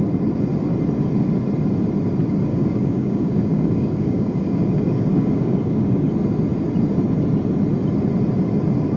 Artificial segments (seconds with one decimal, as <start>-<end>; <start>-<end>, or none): 2.5-6.1